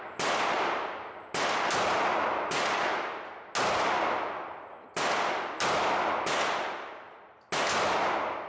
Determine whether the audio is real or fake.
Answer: real